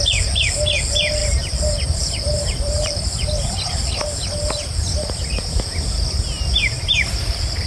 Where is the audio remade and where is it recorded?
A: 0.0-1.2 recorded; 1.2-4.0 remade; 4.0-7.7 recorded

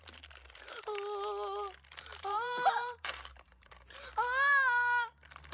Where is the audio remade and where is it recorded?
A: 0.0-2.1 recorded; 2.1-3.7 remade; 3.7-5.5 recorded

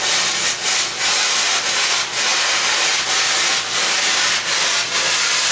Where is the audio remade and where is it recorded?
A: 0.0-0.6 recorded; 0.6-1.5 remade; 1.5-5.5 recorded

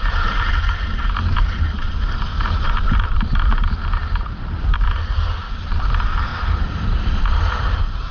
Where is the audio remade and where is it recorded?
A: 0.0-2.3 recorded; 2.3-3.4 remade; 3.4-6.3 recorded; 6.3-8.1 remade

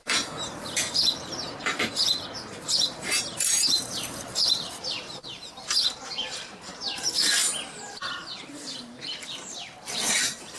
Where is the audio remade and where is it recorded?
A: 0.0-10.6 remade

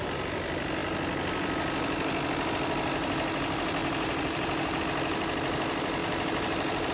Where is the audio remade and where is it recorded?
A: 0.0-3.8 recorded; 3.8-4.8 remade; 4.8-6.0 recorded; 6.0-6.9 remade

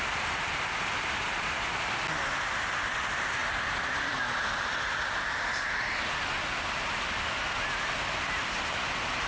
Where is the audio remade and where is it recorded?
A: 0.0-3.4 recorded; 3.4-5.3 remade; 5.3-9.3 recorded

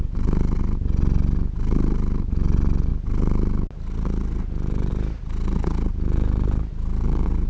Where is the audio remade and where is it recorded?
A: 0.0-7.5 recorded